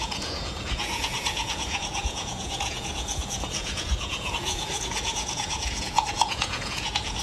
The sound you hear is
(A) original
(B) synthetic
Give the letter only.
B